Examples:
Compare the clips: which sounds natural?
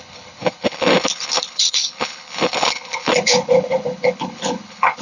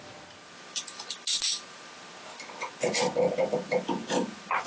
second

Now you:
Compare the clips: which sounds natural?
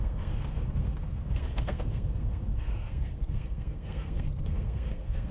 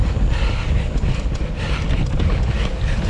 second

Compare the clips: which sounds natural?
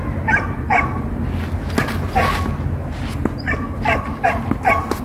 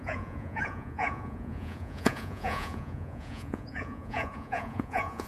first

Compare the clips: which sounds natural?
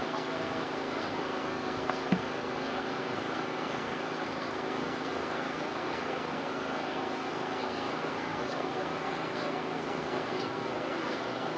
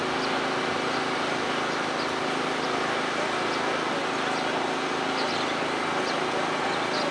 second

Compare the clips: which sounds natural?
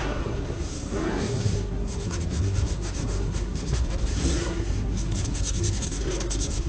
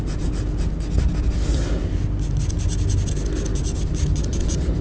second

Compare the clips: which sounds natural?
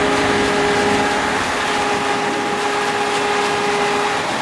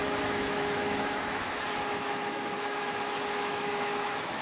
first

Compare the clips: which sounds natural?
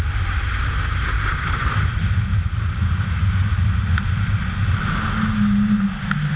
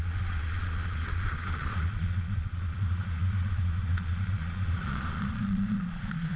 first